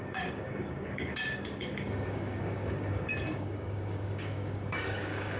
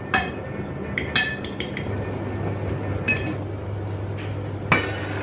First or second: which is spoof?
first